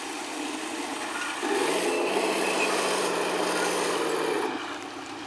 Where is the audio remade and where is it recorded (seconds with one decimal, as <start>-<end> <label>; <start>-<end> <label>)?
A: 0.0-5.3 recorded